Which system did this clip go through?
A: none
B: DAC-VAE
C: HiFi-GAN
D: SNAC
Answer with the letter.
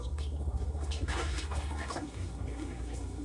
D